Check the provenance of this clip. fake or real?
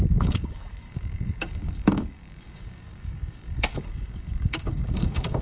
fake